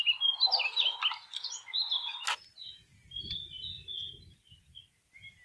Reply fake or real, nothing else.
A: real